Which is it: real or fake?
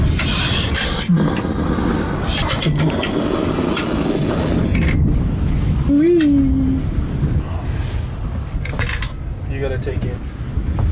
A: real